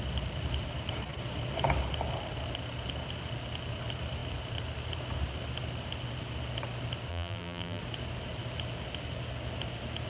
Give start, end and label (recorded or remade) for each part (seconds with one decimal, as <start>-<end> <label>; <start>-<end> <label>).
0.0-7.1 recorded; 7.1-7.8 remade; 7.8-10.1 recorded